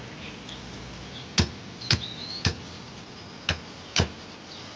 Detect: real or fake real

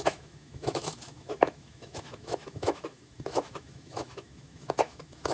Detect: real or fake fake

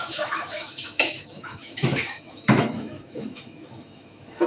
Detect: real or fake fake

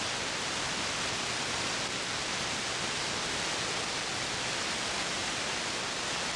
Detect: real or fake real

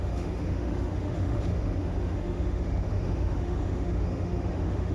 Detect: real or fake fake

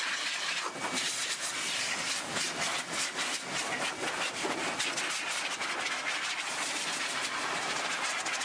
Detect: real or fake real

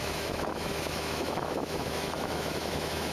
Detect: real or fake fake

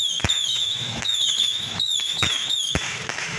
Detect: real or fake fake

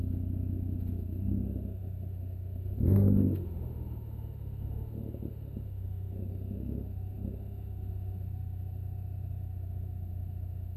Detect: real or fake fake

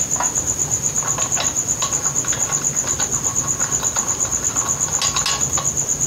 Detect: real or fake real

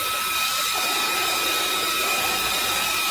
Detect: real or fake real